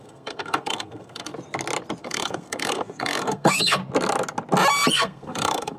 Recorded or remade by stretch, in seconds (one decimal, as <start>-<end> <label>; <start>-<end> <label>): 0.0-1.3 remade; 1.3-2.0 recorded; 2.0-3.8 remade; 3.8-4.9 recorded; 4.9-5.8 remade